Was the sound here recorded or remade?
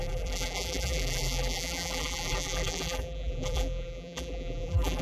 remade